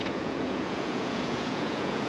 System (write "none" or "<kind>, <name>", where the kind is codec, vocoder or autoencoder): vocoder, Vocos